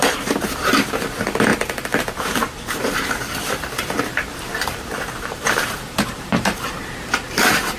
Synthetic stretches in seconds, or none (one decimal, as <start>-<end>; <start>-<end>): 0.0-7.8